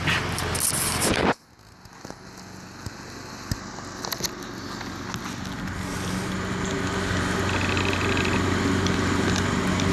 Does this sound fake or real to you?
real